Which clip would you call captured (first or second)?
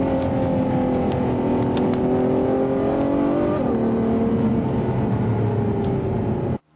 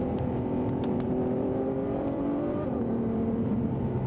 first